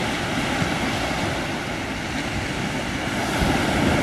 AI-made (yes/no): no